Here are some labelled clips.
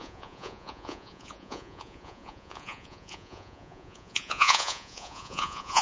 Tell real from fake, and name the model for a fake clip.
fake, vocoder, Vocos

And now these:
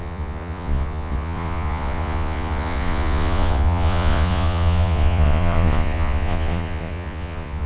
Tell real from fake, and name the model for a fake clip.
fake, vocoder, Vocos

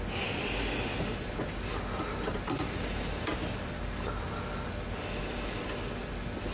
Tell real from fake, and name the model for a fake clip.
real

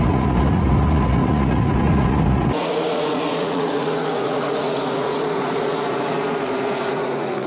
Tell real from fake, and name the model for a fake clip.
fake, vocoder, Vocos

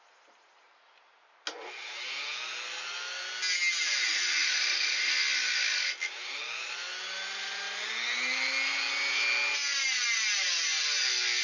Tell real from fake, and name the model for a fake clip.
real